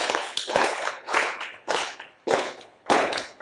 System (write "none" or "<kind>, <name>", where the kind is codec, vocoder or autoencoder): codec, HILCodec